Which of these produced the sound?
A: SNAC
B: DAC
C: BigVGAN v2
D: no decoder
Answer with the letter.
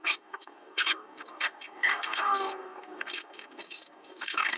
B